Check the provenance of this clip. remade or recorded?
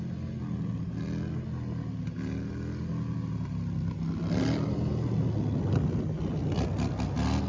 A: recorded